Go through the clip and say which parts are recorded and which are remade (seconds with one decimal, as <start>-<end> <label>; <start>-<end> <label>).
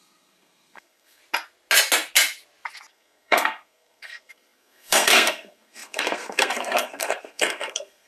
0.0-1.2 remade; 1.2-2.9 recorded; 2.9-8.1 remade